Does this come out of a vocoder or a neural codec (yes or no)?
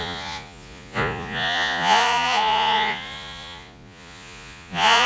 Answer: yes